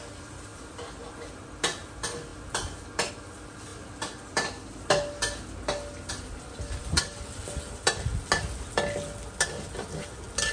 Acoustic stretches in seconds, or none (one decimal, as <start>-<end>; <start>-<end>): 0.0-10.5